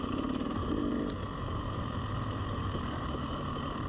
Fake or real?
fake